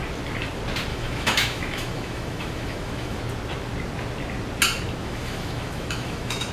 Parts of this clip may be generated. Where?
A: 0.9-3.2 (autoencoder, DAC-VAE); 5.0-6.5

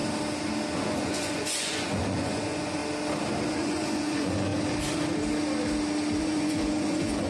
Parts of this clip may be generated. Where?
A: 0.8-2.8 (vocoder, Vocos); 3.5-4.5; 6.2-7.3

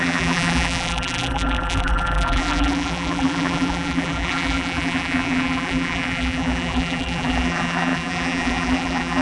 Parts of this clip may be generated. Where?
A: 0.0-9.2 (vocoder, BigVGAN v2)

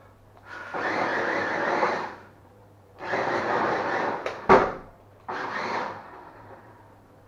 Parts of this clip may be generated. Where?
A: 1.1-3.4 (vocoder, BigVGAN v2); 4.6-6.7

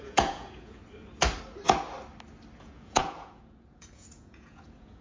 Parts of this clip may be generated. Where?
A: 0.0-0.8 (vocoder, Vocos); 2.6-5.0

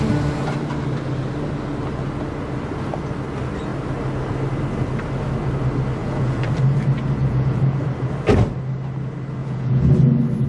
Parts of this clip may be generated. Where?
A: 6.0-6.5 (vocoder, Vocos); 7.2-7.8; 9.4-9.9

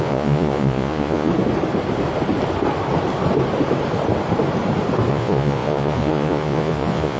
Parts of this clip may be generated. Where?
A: 0.0-1.3 (vocoder, Vocos); 5.1-7.2